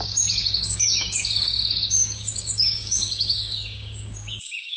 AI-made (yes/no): yes